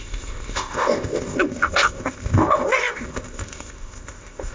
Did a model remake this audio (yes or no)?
yes